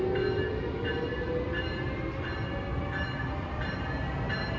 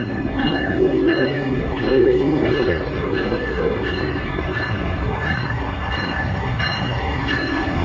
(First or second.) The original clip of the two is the first